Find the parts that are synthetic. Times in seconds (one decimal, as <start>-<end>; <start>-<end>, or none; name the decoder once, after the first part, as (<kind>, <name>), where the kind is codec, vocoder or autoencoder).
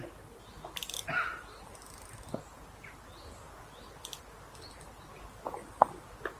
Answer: none